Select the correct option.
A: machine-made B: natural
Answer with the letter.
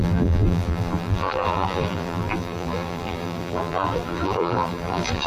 A